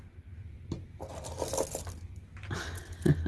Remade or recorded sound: recorded